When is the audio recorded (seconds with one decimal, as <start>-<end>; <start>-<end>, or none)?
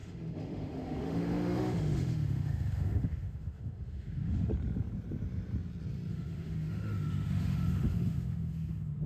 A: 4.5-6.1